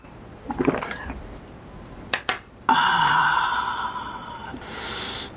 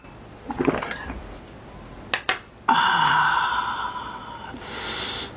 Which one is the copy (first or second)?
first